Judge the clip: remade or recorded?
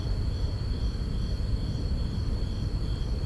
recorded